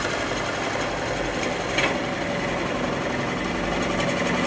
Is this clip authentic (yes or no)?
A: yes